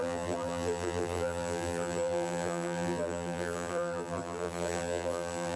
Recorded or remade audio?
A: remade